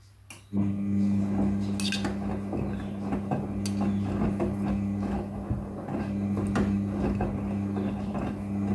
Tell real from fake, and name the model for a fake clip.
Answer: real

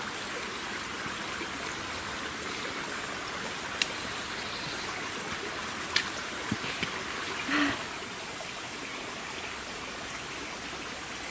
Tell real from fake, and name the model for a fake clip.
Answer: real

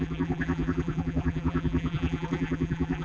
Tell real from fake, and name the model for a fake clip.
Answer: fake, vocoder, BigVGAN v2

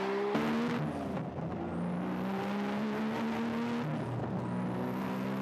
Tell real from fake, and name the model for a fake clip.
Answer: real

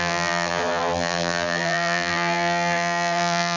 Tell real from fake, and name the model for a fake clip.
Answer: fake, vocoder, BigVGAN v2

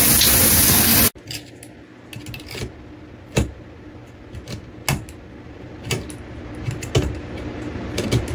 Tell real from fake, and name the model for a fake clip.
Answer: real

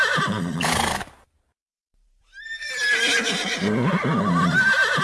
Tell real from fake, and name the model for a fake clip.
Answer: fake, vocoder, BigVGAN v2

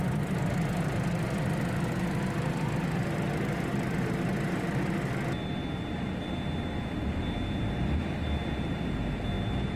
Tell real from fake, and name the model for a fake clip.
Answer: real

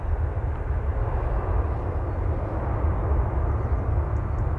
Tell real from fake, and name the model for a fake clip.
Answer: real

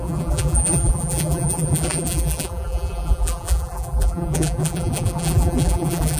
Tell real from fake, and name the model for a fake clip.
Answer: fake, vocoder, BigVGAN v2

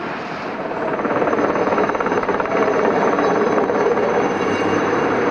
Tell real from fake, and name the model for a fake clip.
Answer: fake, vocoder, BigVGAN v2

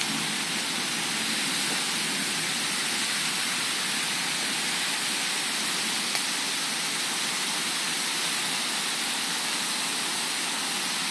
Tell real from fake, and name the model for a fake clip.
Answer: real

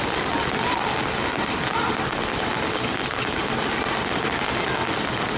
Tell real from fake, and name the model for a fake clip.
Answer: real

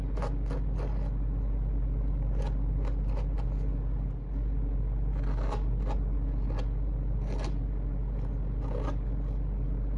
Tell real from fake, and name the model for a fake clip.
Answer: real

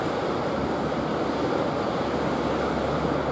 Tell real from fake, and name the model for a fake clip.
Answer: real